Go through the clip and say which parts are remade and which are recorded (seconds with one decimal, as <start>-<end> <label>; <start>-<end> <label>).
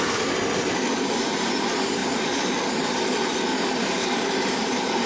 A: 0.0-3.5 recorded; 3.5-5.1 remade